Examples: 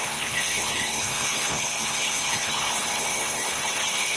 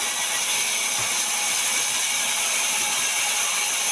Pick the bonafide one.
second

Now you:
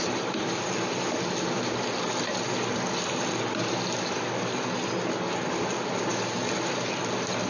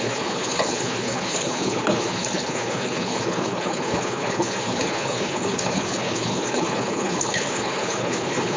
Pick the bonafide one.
first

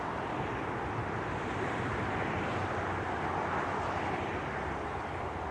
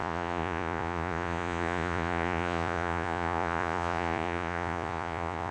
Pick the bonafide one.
first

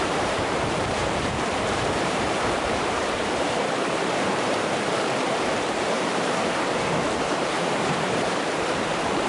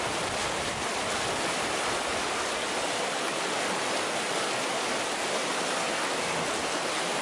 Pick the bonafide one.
second